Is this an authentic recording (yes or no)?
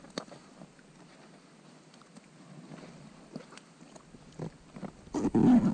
yes